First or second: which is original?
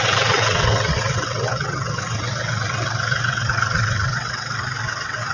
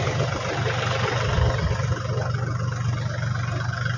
second